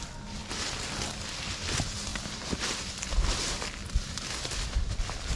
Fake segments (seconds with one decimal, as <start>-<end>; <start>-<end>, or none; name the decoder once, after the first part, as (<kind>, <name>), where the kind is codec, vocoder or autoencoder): 2.1-2.8 (vocoder, BigVGAN v2); 3.8-4.9